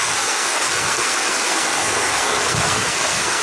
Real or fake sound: fake